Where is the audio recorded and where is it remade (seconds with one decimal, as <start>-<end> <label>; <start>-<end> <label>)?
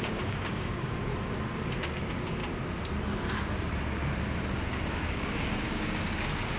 0.0-1.1 remade; 1.1-1.8 recorded; 1.8-2.4 remade; 2.4-5.1 recorded; 5.1-6.6 remade